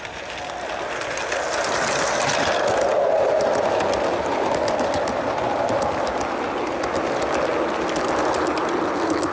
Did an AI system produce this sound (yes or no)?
no